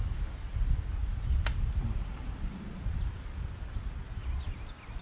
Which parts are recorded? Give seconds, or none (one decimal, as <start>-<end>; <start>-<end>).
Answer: 0.0-1.0; 4.0-5.0

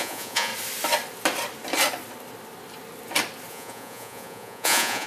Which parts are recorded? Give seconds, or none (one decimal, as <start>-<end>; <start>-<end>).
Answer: 0.5-3.5

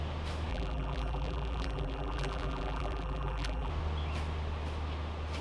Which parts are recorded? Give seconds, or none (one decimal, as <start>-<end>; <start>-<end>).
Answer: 0.0-0.5; 3.7-5.4